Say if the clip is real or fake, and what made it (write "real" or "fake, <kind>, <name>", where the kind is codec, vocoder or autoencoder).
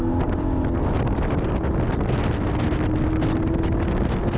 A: real